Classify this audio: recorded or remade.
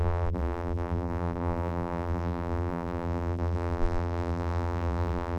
remade